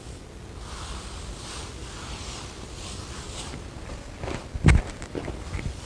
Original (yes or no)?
yes